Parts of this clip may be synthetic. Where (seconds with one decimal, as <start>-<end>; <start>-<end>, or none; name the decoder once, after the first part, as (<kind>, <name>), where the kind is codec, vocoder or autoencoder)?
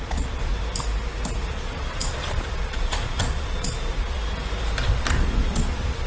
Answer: 0.0-0.5 (vocoder, Vocos); 1.4-4.2; 5.1-6.1